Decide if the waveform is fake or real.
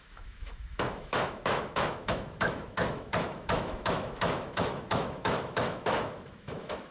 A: fake